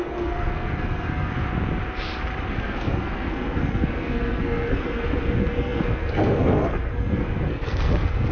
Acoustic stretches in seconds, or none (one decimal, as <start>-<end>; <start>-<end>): 1.3-2.5